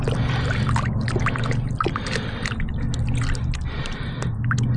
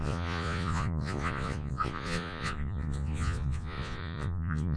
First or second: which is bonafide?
first